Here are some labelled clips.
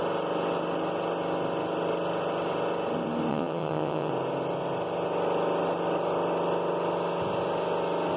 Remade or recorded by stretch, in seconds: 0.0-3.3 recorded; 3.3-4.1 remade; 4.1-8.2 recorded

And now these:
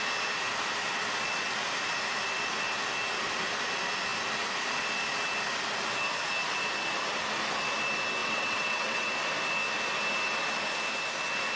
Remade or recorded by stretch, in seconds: 0.0-8.2 recorded; 8.2-9.1 remade; 9.1-11.6 recorded

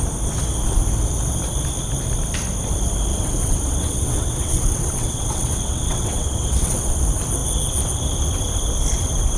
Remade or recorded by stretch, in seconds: 0.0-3.1 recorded; 3.1-6.9 remade; 6.9-9.4 recorded

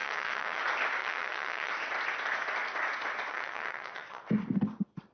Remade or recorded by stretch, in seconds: 0.0-0.6 remade; 0.6-1.0 recorded; 1.0-1.7 remade; 1.7-3.3 recorded; 3.3-4.2 remade; 4.2-5.1 recorded

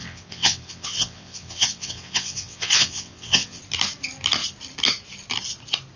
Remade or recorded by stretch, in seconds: 0.0-3.6 remade; 3.6-6.0 recorded

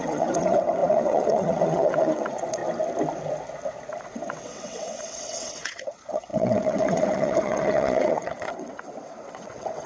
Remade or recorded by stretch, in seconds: 0.0-2.6 remade; 2.6-4.0 recorded; 4.0-9.9 remade

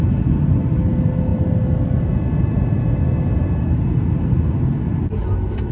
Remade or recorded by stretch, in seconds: 0.0-5.7 recorded

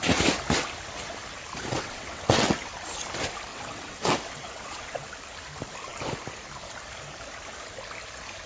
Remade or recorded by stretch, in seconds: 0.0-1.7 recorded; 1.7-2.7 remade; 2.7-3.5 recorded; 3.5-5.0 remade; 5.0-8.5 recorded